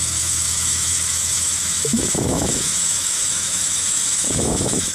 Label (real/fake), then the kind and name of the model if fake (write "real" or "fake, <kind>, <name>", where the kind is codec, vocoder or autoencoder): fake, autoencoder, DAC-VAE